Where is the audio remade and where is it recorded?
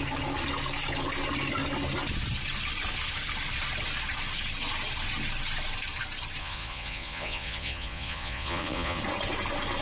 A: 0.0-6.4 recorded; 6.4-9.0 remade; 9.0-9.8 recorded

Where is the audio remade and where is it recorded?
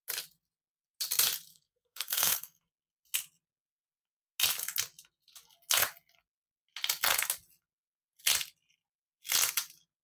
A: 0.0-1.5 recorded; 1.5-2.7 remade; 2.7-10.0 recorded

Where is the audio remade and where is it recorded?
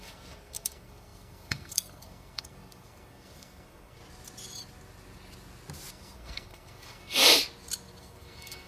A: 0.0-4.0 remade; 4.0-5.9 recorded; 5.9-7.2 remade; 7.2-8.0 recorded; 8.0-8.7 remade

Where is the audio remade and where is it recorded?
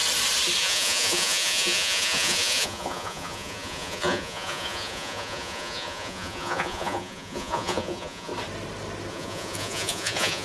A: 0.0-0.6 recorded; 0.6-8.3 remade; 8.3-9.1 recorded; 9.1-10.4 remade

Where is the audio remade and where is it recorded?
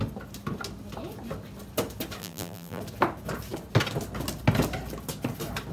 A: 0.0-2.2 recorded; 2.2-2.8 remade; 2.8-5.7 recorded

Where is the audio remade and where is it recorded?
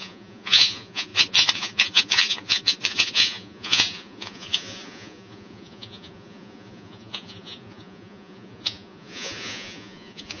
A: 0.0-10.4 remade